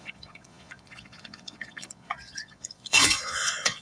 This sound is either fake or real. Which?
fake